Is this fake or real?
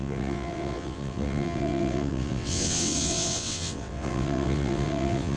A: fake